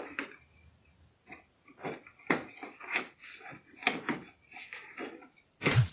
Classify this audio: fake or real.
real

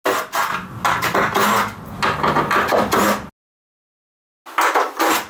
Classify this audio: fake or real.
real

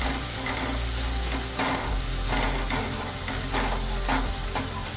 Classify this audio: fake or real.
real